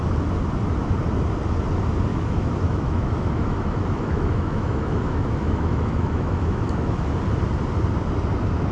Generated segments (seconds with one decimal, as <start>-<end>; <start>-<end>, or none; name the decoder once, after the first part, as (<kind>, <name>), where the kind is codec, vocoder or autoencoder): 2.1-7.1 (autoencoder, DAC-VAE)